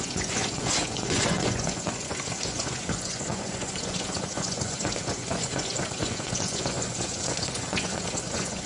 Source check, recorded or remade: remade